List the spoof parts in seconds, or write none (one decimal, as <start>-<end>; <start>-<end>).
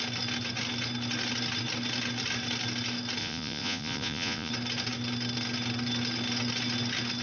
3.2-4.5